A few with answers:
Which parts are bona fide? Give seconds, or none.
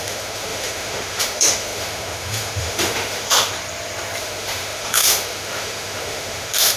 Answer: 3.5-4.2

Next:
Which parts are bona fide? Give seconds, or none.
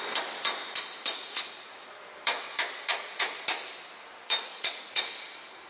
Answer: 0.0-1.2; 1.8-2.9; 3.4-4.5; 5.0-5.7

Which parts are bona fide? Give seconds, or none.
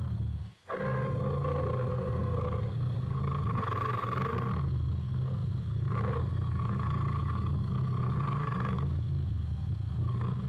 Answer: 0.0-1.9; 3.2-10.5